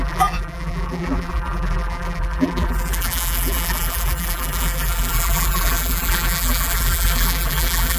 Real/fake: fake